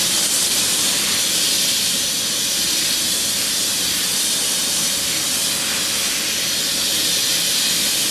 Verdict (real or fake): real